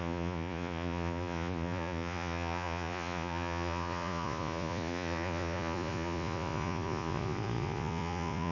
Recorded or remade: remade